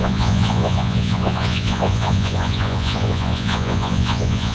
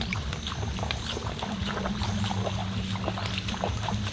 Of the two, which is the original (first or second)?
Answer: second